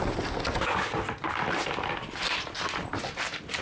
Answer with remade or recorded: recorded